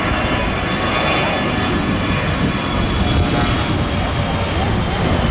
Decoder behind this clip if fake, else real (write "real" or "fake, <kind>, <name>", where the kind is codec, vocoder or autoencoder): real